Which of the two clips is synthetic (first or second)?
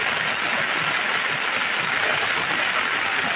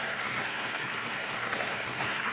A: second